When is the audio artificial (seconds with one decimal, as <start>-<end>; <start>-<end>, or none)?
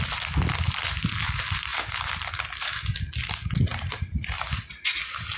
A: 3.7-4.6